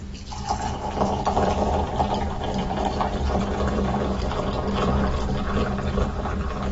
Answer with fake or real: fake